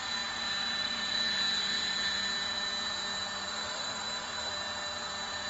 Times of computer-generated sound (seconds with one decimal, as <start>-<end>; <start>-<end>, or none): 3.5-4.5